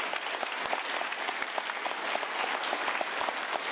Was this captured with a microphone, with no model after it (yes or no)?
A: yes